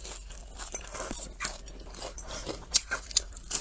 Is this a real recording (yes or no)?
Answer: yes